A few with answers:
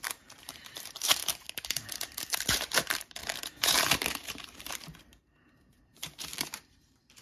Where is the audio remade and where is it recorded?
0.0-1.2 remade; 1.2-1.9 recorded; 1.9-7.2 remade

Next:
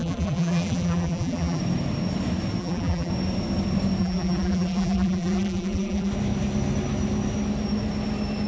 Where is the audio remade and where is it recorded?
0.0-1.6 remade; 1.6-2.6 recorded; 2.6-3.1 remade; 3.1-4.0 recorded; 4.0-6.1 remade; 6.1-8.5 recorded

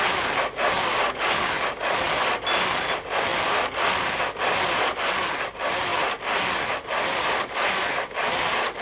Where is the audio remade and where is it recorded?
0.0-3.3 recorded; 3.3-4.6 remade; 4.6-5.9 recorded; 5.9-7.8 remade; 7.8-8.8 recorded